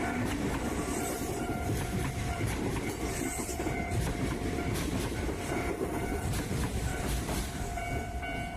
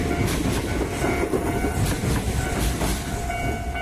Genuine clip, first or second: second